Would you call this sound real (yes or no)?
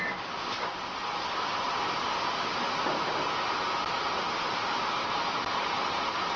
yes